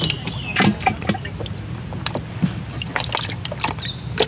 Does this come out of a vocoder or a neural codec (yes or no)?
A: no